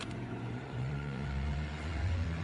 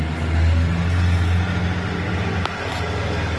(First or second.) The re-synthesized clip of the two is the first